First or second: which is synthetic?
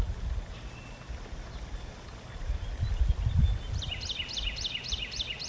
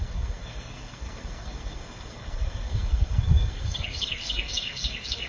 second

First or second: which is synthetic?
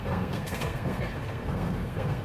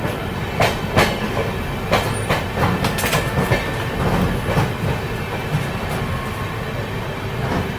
first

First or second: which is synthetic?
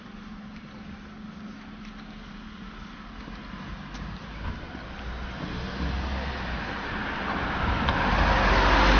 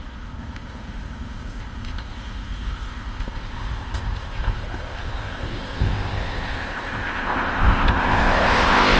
second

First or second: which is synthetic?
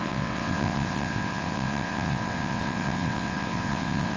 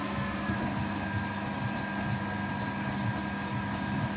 first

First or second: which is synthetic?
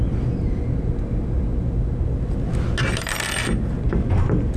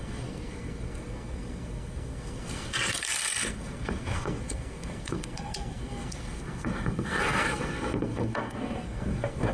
second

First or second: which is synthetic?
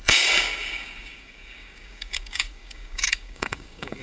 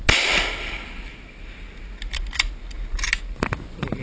first